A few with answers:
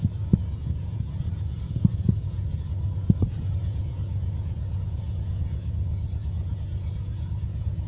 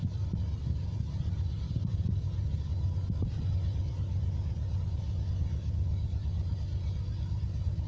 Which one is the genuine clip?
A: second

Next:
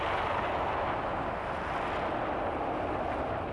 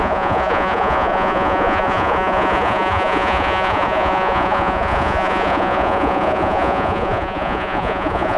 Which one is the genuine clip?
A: first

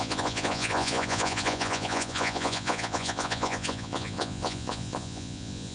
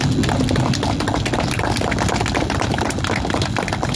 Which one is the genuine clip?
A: second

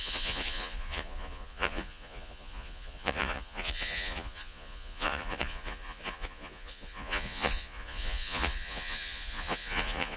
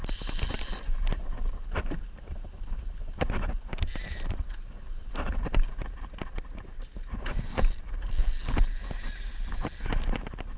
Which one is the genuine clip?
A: second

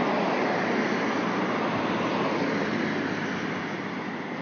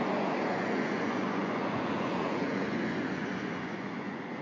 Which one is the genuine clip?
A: first